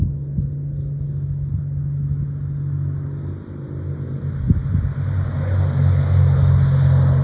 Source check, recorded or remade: recorded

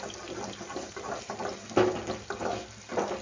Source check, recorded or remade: recorded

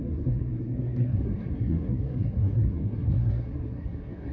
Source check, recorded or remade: remade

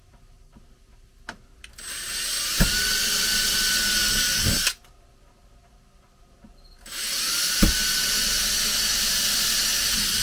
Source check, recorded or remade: recorded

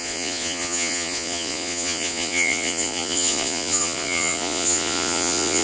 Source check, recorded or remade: remade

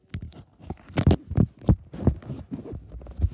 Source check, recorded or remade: recorded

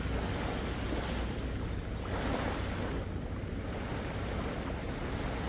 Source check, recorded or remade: recorded